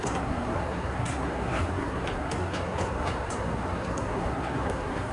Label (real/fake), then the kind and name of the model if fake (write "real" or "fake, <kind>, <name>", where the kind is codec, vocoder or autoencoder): fake, codec, SNAC